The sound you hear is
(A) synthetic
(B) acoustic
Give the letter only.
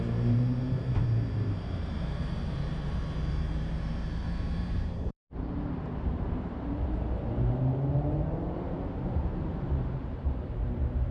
A